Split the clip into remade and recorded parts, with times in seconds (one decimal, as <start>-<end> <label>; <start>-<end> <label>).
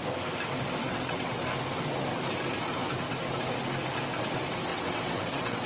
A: 0.0-0.8 recorded; 0.8-1.4 remade; 1.4-4.7 recorded; 4.7-5.7 remade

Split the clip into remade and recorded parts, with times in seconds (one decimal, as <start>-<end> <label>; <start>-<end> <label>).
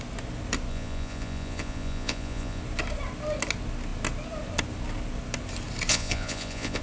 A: 0.0-0.7 recorded; 0.7-2.6 remade; 2.6-5.9 recorded; 5.9-6.8 remade